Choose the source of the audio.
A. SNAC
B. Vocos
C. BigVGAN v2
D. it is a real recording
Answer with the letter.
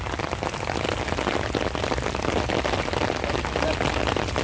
D